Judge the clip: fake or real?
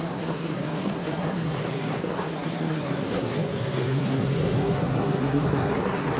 fake